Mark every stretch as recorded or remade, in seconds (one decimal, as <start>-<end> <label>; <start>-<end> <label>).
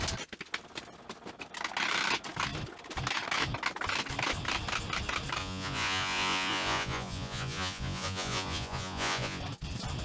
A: 0.0-5.4 recorded; 5.4-9.4 remade; 9.4-10.0 recorded